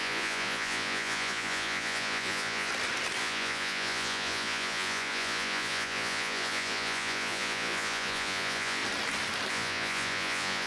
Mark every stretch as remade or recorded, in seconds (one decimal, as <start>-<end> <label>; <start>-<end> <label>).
0.0-2.7 remade; 2.7-3.2 recorded; 3.2-8.8 remade; 8.8-9.5 recorded; 9.5-10.7 remade

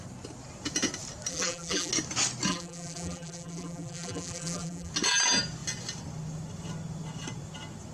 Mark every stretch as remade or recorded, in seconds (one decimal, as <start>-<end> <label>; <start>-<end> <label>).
0.0-1.3 recorded; 1.3-1.9 remade; 1.9-2.5 recorded; 2.5-4.9 remade; 4.9-7.9 recorded

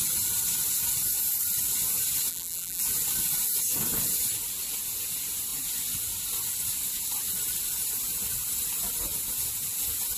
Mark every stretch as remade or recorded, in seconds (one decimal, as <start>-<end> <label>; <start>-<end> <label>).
0.0-2.3 recorded; 2.3-2.8 remade; 2.8-10.2 recorded

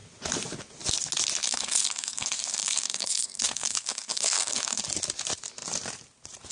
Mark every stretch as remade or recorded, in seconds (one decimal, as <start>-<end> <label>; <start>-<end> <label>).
0.0-1.4 recorded; 1.4-4.8 remade; 4.8-6.5 recorded

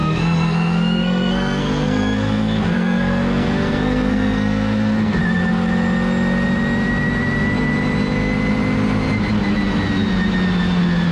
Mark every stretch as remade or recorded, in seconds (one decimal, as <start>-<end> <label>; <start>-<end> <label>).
0.0-5.2 remade; 5.2-11.1 recorded

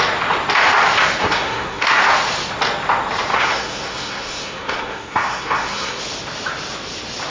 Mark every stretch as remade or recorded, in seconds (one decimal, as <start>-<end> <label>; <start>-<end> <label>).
0.0-1.2 recorded; 1.2-2.0 remade; 2.0-3.3 recorded; 3.3-6.0 remade; 6.0-7.3 recorded

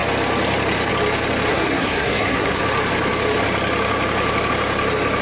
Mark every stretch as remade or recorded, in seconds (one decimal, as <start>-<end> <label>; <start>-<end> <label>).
0.0-1.5 recorded; 1.5-2.6 remade; 2.6-5.2 recorded

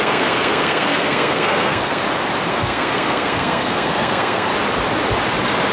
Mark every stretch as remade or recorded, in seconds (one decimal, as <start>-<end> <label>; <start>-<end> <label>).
0.0-2.0 remade; 2.0-2.5 recorded; 2.5-4.5 remade; 4.5-5.7 recorded